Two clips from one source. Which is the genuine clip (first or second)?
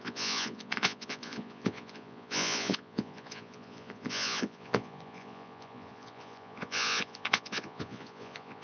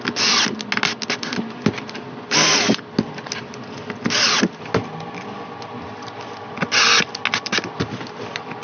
second